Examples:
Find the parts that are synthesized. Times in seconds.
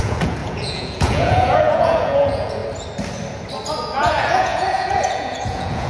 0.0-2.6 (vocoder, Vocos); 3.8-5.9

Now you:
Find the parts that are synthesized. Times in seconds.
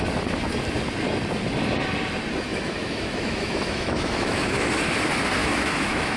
2.5-4.7 (autoencoder, DAC-VAE); 5.4-6.2